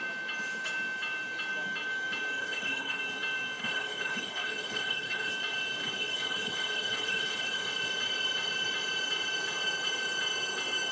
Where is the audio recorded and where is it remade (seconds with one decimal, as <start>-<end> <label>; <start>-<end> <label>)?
0.0-2.4 recorded; 2.4-3.0 remade; 3.0-3.6 recorded; 3.6-5.3 remade; 5.3-5.8 recorded; 5.8-7.7 remade; 7.7-10.9 recorded